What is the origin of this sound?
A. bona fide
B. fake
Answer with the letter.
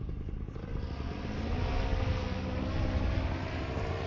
A